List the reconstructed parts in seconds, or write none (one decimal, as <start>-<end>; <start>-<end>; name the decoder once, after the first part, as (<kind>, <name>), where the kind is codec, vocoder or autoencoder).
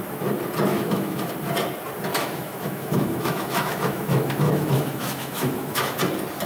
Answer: 0.7-1.3 (autoencoder, DAC-VAE); 2.1-6.0